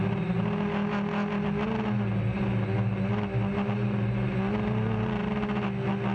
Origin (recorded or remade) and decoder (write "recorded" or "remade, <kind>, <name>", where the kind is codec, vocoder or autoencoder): recorded